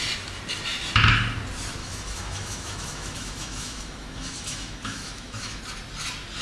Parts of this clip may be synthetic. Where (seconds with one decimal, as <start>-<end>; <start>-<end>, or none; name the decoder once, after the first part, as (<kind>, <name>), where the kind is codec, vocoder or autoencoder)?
1.8-5.6 (autoencoder, DAC-VAE)